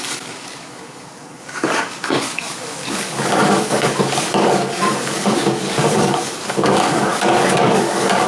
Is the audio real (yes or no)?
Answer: no